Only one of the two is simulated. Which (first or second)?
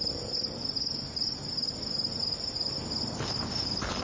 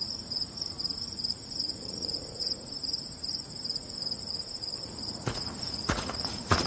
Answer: second